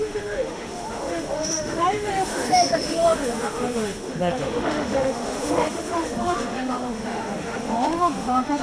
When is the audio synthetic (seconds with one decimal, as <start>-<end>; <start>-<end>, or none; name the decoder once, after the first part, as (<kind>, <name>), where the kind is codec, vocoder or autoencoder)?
0.0-8.6 (autoencoder, DAC-VAE)